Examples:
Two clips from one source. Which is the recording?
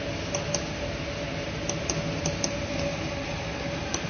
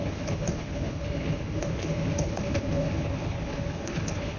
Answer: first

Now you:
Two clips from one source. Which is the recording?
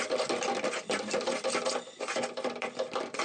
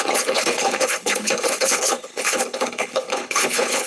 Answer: first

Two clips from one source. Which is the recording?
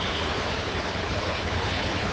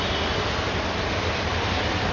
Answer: second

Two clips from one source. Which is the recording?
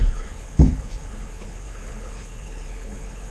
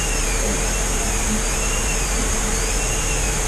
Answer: second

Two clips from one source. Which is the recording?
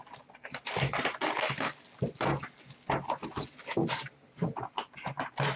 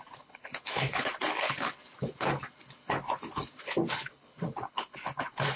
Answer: first